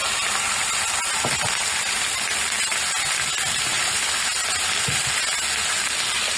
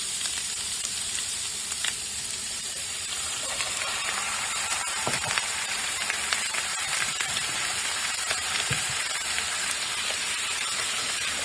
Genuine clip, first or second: first